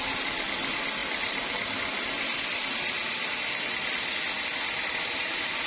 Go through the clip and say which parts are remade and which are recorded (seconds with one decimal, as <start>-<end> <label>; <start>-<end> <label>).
0.0-5.7 recorded